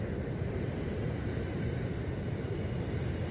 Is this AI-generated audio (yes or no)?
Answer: no